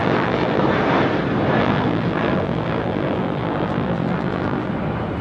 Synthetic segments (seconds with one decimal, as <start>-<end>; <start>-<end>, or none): 0.0-0.6; 1.6-4.7